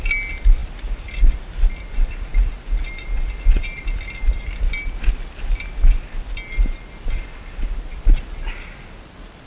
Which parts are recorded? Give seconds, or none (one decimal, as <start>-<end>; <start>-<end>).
0.0-9.5